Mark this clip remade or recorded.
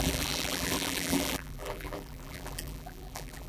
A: remade